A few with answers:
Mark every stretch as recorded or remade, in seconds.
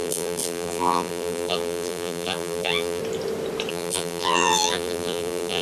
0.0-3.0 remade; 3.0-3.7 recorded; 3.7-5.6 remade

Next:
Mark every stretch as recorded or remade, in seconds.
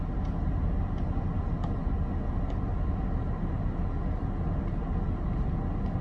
0.0-6.0 recorded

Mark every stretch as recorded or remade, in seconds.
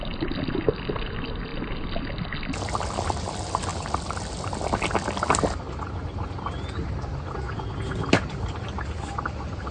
0.0-3.7 recorded; 3.7-4.2 remade; 4.2-9.7 recorded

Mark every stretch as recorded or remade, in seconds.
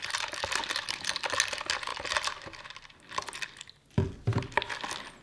0.0-5.2 recorded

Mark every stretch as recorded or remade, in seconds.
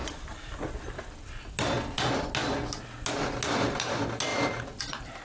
0.0-4.3 recorded; 4.3-5.2 remade